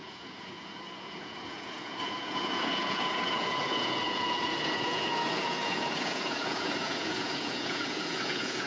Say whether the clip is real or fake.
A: fake